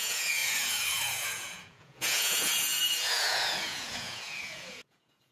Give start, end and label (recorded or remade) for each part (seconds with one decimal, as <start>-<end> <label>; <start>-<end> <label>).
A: 0.0-5.3 remade